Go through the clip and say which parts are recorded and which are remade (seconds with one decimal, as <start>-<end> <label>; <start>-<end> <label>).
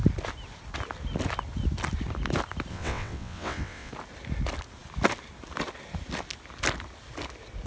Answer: 0.0-2.7 recorded; 2.7-3.9 remade; 3.9-7.7 recorded